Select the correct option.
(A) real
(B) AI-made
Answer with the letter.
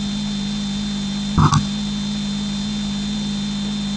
A